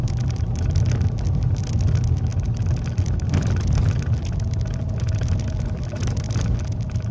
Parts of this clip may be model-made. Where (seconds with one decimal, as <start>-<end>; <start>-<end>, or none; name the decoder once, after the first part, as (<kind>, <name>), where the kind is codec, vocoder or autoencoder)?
none